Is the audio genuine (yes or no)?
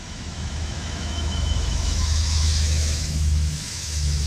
no